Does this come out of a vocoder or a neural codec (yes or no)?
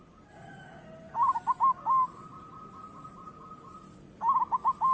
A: no